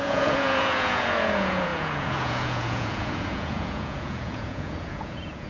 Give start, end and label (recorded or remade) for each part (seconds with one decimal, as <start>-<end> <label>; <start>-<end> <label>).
0.0-5.5 remade